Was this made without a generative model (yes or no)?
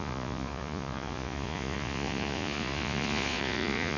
no